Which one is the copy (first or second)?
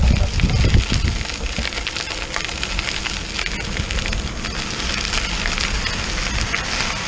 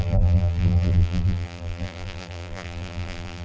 second